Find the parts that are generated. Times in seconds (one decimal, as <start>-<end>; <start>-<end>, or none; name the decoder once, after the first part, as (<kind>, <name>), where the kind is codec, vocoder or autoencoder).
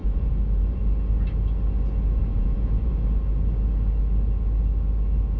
0.0-0.8 (vocoder, Vocos); 2.2-2.9